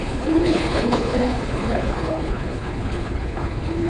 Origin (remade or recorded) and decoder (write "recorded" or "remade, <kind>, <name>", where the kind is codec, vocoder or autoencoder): remade, codec, HILCodec